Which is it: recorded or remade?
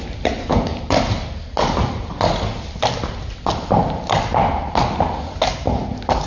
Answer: recorded